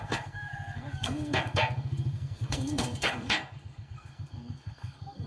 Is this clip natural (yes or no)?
no